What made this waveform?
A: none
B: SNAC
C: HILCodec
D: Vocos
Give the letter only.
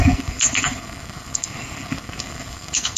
B